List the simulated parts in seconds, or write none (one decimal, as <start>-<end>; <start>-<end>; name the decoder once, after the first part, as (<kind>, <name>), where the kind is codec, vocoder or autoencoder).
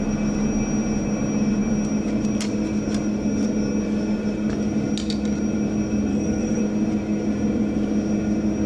6.1-6.6 (codec, DAC)